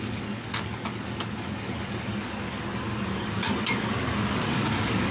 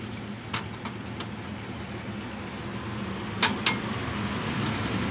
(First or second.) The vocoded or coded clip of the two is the first